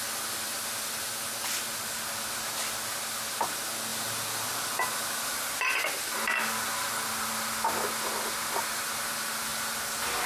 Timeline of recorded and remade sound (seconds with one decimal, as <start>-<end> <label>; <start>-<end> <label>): 0.0-10.3 recorded